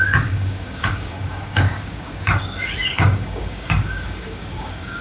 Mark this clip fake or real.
fake